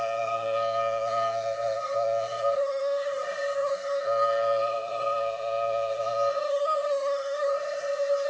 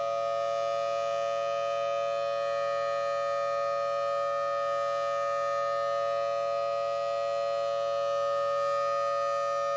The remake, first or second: first